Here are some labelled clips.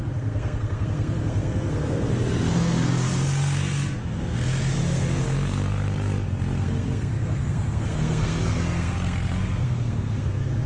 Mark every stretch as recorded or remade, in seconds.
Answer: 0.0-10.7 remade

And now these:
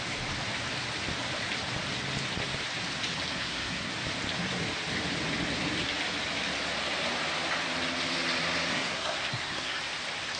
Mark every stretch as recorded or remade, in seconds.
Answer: 0.0-3.3 recorded; 3.3-3.9 remade; 3.9-8.7 recorded; 8.7-9.8 remade; 9.8-10.4 recorded